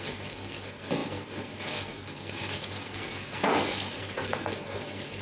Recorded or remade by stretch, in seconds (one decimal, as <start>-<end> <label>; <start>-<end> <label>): 0.0-5.2 remade